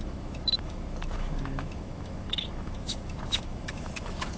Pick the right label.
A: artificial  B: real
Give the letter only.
A